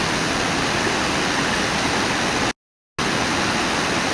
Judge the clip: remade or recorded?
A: recorded